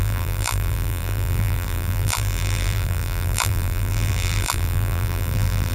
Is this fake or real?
fake